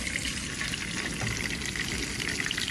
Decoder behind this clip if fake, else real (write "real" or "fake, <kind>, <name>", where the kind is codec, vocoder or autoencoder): real